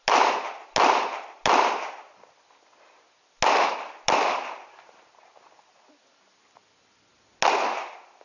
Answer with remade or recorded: recorded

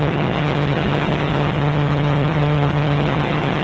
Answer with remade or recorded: remade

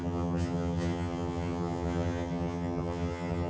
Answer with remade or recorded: remade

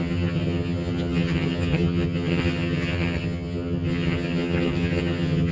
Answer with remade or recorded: remade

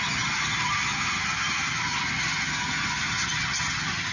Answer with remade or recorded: remade